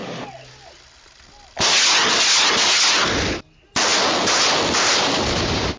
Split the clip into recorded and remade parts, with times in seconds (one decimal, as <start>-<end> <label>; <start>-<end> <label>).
0.0-5.8 recorded